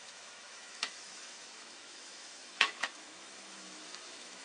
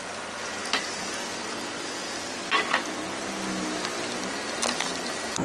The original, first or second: second